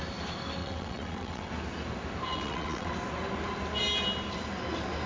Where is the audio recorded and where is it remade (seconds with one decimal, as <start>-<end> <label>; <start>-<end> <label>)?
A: 0.0-0.6 recorded; 0.6-1.5 remade; 1.5-2.3 recorded; 2.3-2.9 remade; 2.9-5.1 recorded